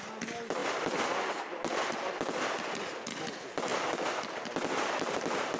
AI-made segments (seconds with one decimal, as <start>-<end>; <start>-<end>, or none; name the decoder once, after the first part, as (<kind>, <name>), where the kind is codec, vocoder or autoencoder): none